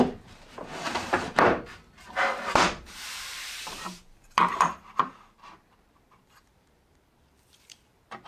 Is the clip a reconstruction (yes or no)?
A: yes